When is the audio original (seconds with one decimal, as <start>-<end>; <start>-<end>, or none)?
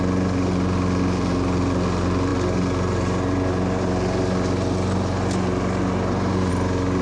0.0-7.0